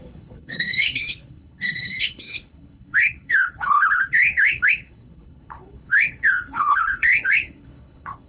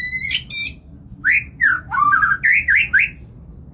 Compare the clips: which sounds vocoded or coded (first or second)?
first